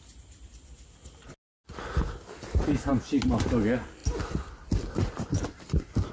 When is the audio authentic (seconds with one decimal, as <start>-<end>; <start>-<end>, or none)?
0.0-4.0